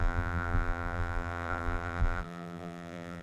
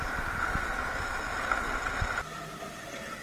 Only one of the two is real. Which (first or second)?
second